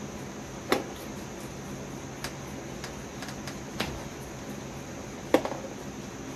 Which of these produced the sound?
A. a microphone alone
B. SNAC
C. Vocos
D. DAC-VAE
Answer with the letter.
A